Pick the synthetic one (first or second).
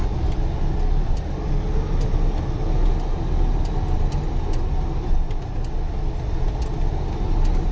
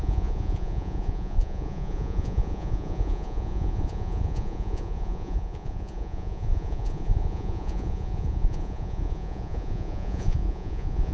second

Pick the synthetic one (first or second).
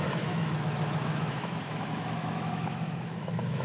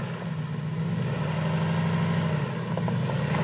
first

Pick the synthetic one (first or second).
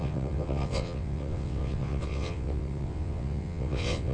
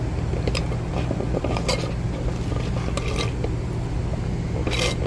first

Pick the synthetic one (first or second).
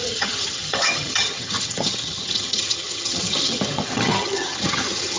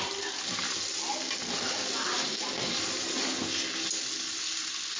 first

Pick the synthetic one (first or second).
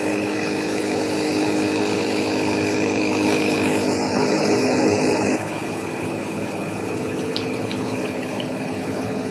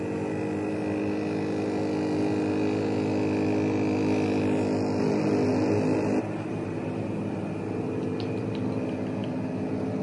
first